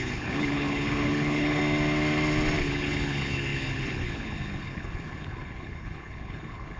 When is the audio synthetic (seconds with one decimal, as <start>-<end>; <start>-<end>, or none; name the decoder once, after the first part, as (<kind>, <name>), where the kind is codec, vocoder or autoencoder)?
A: 0.0-1.6 (codec, HILCodec); 2.6-6.8